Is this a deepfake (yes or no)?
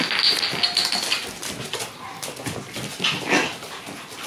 no